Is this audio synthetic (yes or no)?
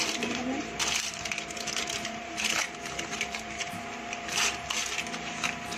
yes